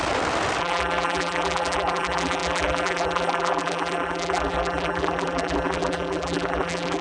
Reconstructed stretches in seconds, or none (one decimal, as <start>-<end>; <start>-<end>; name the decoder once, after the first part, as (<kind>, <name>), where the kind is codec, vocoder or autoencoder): 0.6-7.0 (vocoder, BigVGAN v2)